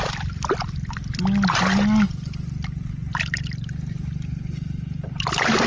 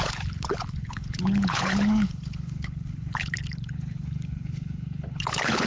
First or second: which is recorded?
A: first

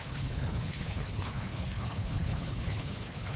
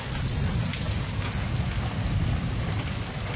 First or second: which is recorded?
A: second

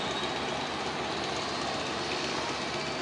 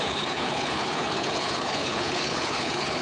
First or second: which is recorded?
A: first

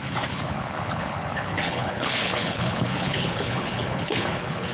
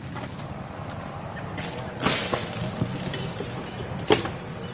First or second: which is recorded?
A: second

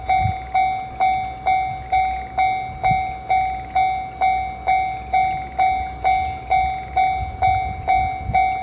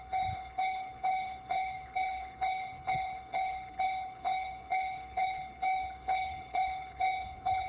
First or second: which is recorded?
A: first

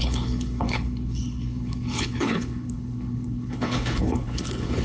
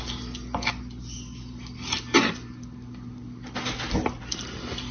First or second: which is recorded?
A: second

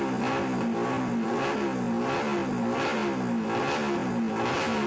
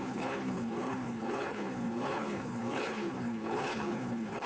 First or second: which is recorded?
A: first